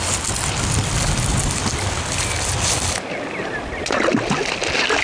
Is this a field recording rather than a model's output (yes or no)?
yes